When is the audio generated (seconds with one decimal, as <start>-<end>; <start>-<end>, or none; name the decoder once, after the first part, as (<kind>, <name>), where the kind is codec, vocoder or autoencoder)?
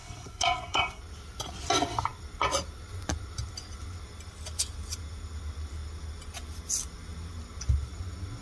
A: 0.0-1.0 (codec, SNAC)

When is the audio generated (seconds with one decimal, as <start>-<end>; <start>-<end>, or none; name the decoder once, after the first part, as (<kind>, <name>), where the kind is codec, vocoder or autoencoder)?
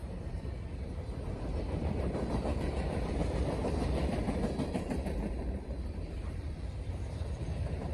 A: 0.0-7.9 (vocoder, BigVGAN v2)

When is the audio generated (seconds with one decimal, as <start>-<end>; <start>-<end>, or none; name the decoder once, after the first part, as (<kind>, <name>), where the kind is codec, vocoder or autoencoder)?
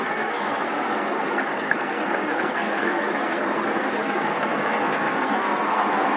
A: 0.0-6.2 (codec, SNAC)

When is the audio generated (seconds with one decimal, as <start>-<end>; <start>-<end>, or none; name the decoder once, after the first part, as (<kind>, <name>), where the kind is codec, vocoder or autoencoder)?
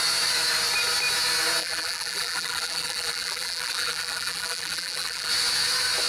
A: 1.6-5.3 (vocoder, BigVGAN v2)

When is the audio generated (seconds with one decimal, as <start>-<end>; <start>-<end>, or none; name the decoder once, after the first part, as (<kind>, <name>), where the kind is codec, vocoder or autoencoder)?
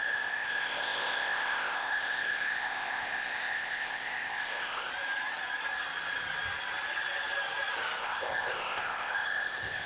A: 0.0-4.9 (codec, ZipCodec); 8.0-9.9